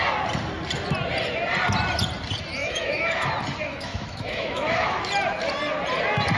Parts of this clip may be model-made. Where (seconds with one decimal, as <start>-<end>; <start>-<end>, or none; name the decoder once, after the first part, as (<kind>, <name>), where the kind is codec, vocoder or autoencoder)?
2.6-3.3 (autoencoder, DAC-VAE); 3.7-5.1